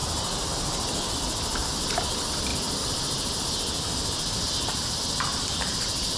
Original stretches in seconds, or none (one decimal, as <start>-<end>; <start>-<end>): 1.7-2.5; 3.9-5.3